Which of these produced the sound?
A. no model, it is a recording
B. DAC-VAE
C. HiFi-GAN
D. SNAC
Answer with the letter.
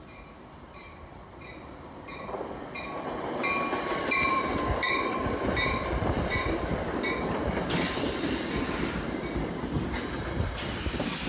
A